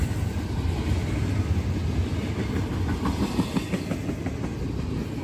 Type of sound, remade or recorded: recorded